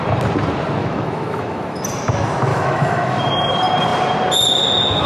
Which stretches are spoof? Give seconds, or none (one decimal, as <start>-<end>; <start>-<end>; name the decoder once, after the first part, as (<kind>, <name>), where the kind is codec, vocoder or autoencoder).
0.8-1.8 (autoencoder, DAC-VAE); 2.5-3.3